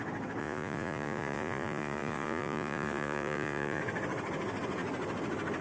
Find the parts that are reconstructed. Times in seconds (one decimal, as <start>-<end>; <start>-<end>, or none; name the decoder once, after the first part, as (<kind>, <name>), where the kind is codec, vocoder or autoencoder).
0.4-3.8 (vocoder, Vocos)